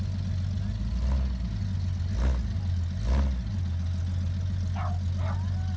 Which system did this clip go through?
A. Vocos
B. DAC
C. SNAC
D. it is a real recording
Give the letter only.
D